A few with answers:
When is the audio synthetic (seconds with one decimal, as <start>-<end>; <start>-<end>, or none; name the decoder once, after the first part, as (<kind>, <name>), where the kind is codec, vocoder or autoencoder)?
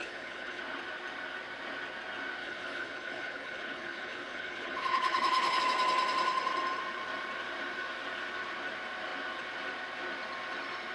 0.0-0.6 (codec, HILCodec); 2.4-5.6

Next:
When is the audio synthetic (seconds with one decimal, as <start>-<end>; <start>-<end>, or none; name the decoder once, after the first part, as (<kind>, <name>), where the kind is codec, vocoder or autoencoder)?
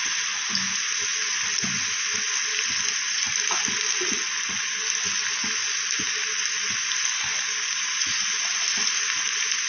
none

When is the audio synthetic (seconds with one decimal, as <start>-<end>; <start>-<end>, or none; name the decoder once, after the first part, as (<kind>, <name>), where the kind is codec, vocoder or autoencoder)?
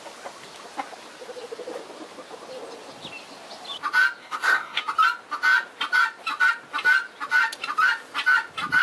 4.2-4.8 (codec, SNAC)